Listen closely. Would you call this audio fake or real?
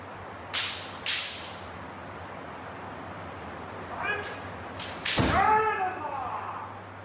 real